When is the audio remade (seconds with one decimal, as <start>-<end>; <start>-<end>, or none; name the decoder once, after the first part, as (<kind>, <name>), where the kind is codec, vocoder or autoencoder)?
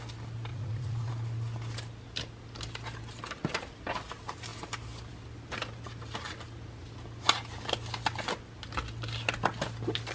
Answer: 0.5-1.1 (vocoder, Vocos)